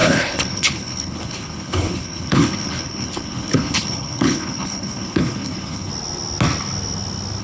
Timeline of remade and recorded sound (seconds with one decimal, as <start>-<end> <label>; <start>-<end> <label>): 0.0-5.9 remade; 5.9-7.4 recorded